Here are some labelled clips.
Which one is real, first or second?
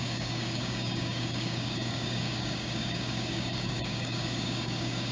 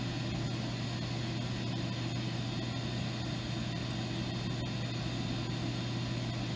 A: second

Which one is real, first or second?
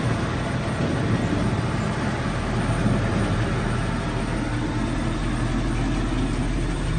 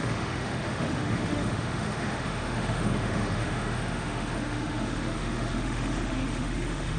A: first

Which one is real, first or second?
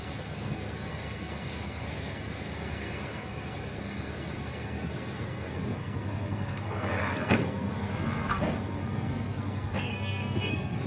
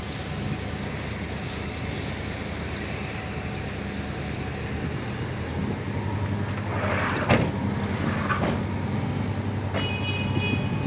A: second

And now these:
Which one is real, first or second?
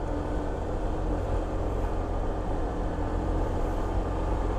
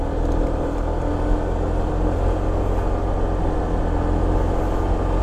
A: second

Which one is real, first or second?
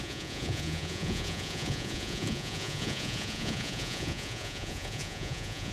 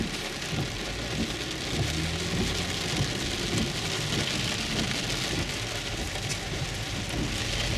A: second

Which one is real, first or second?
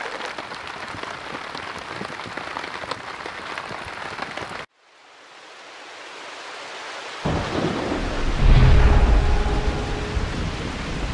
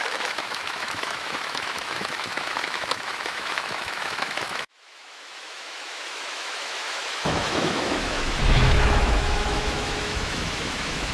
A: first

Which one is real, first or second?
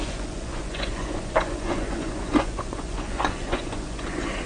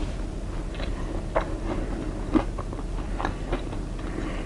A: second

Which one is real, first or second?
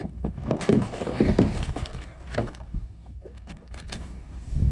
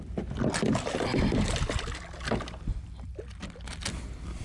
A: second